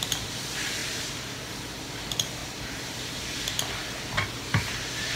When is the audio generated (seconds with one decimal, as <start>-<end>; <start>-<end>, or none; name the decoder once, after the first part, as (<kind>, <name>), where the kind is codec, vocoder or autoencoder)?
0.8-1.8 (vocoder, BigVGAN v2); 2.4-3.4